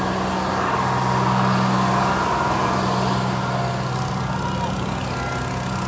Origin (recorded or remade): recorded